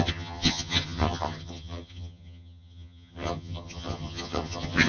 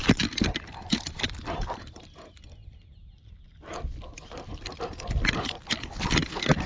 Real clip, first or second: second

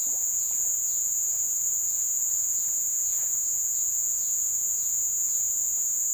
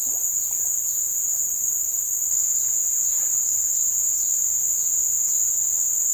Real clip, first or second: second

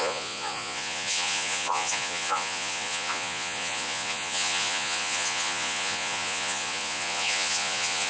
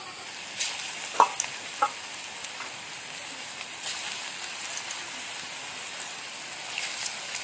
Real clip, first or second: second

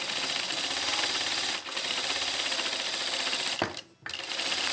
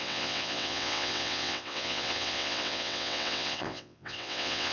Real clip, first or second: first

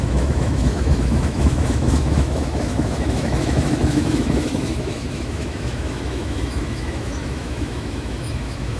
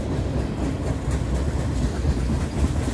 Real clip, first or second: second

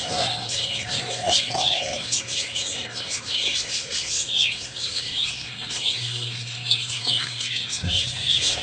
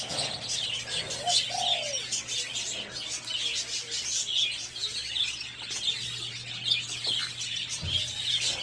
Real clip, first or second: second